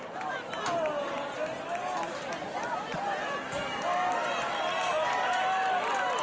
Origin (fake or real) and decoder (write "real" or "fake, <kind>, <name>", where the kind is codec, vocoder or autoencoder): real